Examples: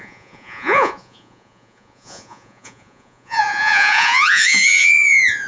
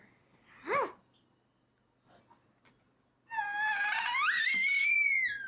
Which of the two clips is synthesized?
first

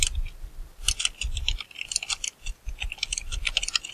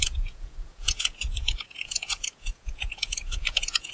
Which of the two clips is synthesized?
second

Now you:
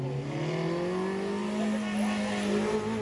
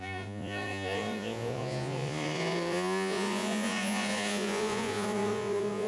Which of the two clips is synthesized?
second